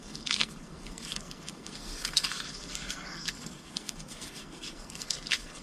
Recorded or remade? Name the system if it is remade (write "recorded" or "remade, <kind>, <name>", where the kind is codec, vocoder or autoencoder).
remade, codec, SNAC